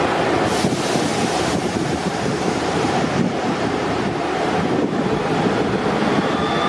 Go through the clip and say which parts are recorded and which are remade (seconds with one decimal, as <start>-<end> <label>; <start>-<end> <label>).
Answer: 0.0-1.1 recorded; 1.1-5.1 remade; 5.1-6.7 recorded